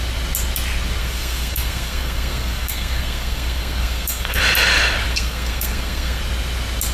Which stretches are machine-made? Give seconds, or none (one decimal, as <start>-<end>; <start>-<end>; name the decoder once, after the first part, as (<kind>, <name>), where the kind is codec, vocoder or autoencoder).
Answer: 1.0-4.4 (codec, SNAC); 5.1-6.2